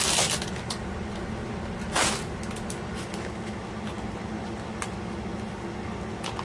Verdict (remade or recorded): recorded